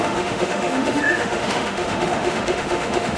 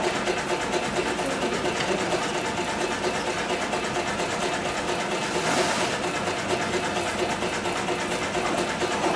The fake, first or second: first